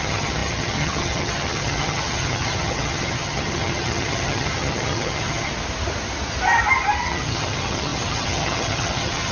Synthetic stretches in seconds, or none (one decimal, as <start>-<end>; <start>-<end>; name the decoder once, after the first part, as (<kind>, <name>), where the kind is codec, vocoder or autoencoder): 0.0-5.5 (vocoder, HiFi-GAN); 7.0-9.3